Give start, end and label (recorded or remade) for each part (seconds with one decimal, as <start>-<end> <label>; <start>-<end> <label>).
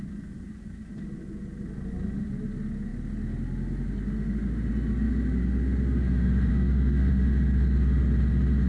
0.0-6.5 recorded; 6.5-7.1 remade; 7.1-8.7 recorded